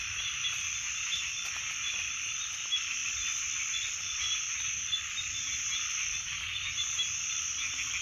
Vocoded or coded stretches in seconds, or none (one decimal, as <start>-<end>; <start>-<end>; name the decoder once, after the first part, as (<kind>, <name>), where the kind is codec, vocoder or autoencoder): none